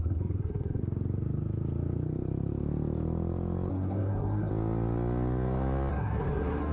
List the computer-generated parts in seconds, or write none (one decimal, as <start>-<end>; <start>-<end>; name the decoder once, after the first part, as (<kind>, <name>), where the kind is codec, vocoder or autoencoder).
0.0-0.8 (codec, SNAC); 3.7-4.5; 5.9-6.7